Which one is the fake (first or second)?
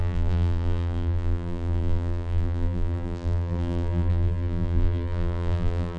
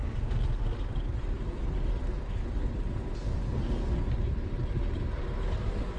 first